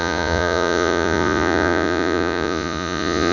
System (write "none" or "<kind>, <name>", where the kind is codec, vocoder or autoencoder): vocoder, Vocos